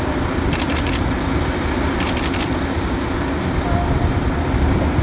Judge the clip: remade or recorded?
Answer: remade